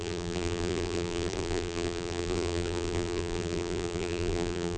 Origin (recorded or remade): remade